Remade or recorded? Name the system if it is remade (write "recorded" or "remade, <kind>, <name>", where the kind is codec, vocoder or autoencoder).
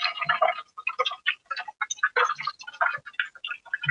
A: recorded